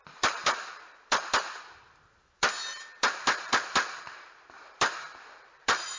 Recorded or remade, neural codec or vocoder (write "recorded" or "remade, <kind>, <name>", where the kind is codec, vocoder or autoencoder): remade, vocoder, BigVGAN v2